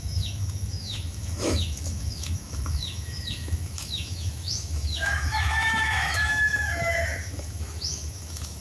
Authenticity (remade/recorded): remade